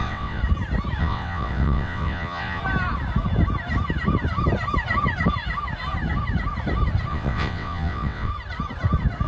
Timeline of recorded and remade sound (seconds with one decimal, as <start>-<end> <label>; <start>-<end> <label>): 0.0-0.4 remade; 0.4-1.0 recorded; 1.0-2.6 remade; 2.6-7.1 recorded; 7.1-8.3 remade; 8.3-9.3 recorded